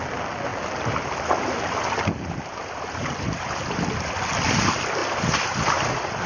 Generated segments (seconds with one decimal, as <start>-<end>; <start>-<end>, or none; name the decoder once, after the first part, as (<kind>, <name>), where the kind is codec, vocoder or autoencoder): none

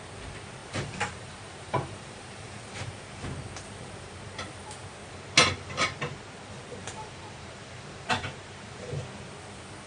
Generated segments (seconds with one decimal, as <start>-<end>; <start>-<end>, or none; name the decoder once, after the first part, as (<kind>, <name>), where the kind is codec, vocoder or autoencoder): 0.6-2.6 (vocoder, BigVGAN v2); 6.8-8.8

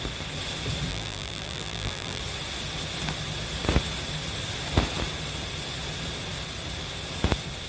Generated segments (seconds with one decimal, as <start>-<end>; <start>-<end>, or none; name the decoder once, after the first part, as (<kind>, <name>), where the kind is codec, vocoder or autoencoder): 0.9-2.2 (vocoder, BigVGAN v2)

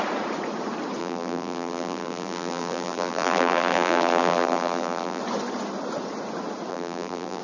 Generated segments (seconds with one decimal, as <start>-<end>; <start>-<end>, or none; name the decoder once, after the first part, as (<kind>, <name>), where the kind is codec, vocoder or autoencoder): 1.0-5.2 (vocoder, BigVGAN v2); 6.7-7.4

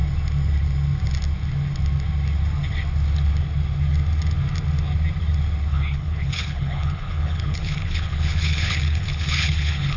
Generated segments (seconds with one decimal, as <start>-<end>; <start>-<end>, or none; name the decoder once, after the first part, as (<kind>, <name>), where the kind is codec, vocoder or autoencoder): 5.7-10.0 (codec, HILCodec)

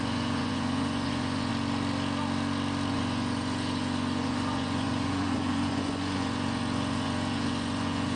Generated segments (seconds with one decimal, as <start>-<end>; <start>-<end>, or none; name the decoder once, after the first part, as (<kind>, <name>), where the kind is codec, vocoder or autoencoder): 0.0-1.5 (vocoder, Vocos); 2.9-8.2